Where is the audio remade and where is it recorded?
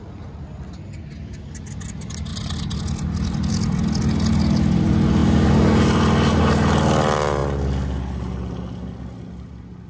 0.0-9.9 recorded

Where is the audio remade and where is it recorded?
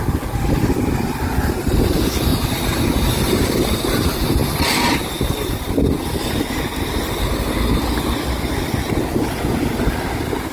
0.0-10.5 recorded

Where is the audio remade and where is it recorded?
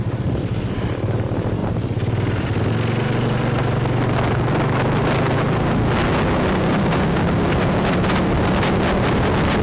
0.0-9.6 recorded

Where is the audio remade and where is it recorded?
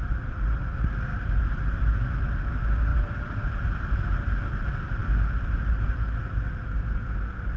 0.0-1.1 recorded; 1.1-1.9 remade; 1.9-2.9 recorded; 2.9-4.3 remade; 4.3-7.6 recorded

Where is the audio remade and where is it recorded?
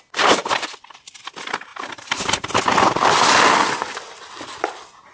0.0-0.4 recorded; 0.4-1.1 remade; 1.1-1.7 recorded; 1.7-3.4 remade; 3.4-5.1 recorded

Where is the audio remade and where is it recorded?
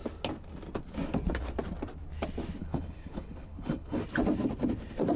0.0-2.6 recorded; 2.6-4.0 remade; 4.0-5.2 recorded